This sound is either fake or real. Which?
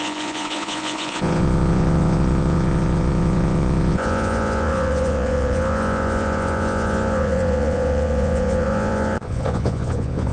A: fake